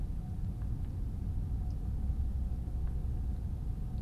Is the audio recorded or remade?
recorded